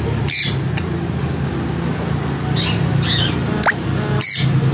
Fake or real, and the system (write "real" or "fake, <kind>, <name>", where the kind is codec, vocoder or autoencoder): real